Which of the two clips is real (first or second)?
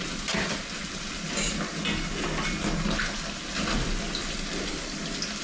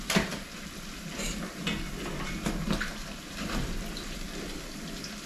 first